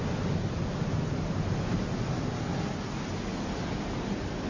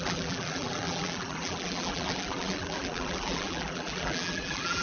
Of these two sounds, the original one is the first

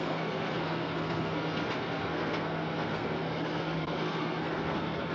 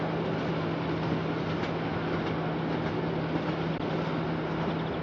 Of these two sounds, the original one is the second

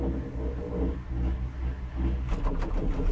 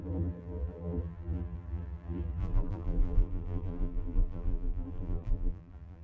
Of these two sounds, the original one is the first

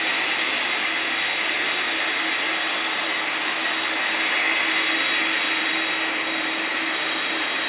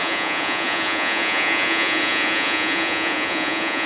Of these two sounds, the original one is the first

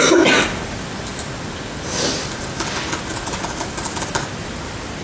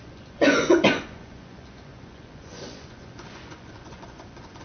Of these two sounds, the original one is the first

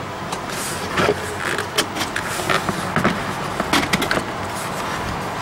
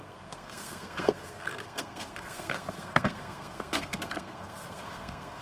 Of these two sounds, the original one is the first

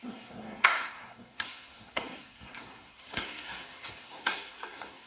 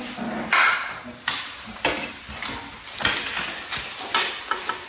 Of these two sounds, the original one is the second